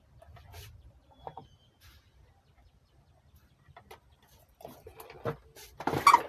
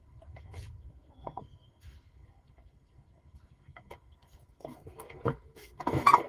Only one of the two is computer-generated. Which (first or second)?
second